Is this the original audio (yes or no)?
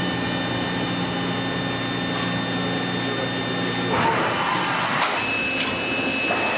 yes